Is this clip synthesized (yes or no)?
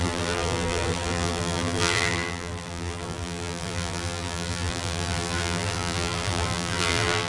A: yes